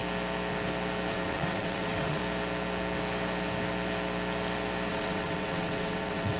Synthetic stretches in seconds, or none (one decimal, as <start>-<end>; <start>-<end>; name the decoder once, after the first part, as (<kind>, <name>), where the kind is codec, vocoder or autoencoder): 1.1-2.2 (vocoder, WaveNeXt); 4.9-6.4